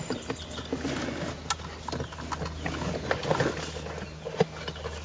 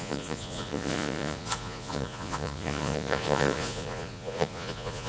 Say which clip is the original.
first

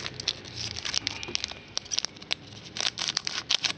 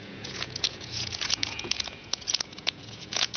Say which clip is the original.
first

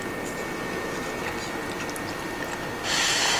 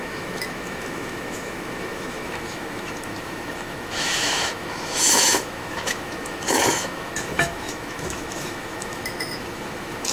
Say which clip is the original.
first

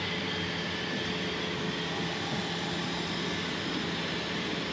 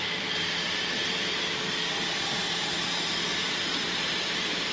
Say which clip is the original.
first